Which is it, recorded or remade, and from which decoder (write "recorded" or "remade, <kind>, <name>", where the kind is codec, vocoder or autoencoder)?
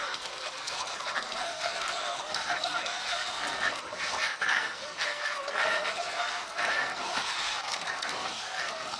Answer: remade, codec, SNAC